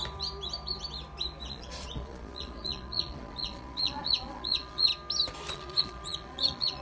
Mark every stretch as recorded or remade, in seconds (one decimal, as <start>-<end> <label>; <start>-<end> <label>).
0.0-1.5 recorded; 1.5-4.9 remade; 4.9-5.5 recorded; 5.5-6.8 remade